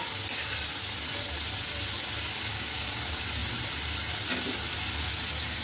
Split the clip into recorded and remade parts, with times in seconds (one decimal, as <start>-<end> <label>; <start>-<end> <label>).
0.0-2.5 recorded; 2.5-3.0 remade; 3.0-5.6 recorded